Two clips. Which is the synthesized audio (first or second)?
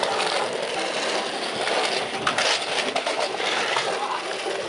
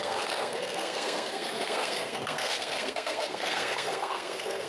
second